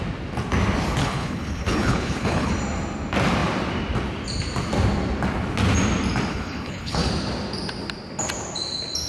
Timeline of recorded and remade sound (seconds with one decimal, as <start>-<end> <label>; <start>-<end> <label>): 0.0-1.0 recorded; 1.0-2.5 remade; 2.5-6.3 recorded; 6.3-7.1 remade; 7.1-9.1 recorded